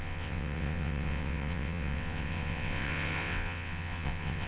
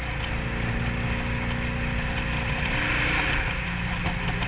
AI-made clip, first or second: first